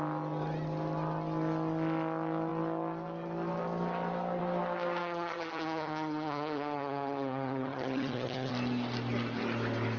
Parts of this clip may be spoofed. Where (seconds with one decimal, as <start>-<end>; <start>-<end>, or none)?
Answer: 5.0-8.5